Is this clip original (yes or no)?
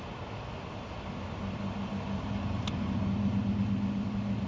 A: yes